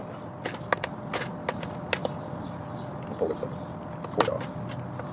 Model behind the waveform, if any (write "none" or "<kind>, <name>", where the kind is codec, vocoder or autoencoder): none